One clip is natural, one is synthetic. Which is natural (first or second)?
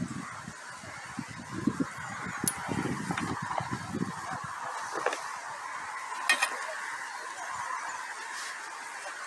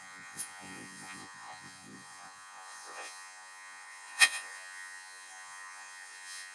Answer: first